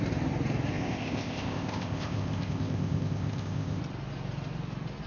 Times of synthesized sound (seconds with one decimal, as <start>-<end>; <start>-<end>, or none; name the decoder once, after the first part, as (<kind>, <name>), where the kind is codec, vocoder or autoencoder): 0.7-3.8 (codec, ZipCodec)